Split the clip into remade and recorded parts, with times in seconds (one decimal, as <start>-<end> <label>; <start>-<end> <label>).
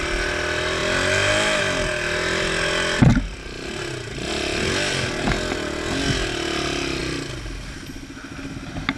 0.0-9.0 recorded